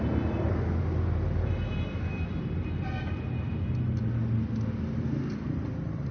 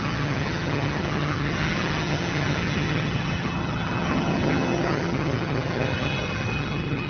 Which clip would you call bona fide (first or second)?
first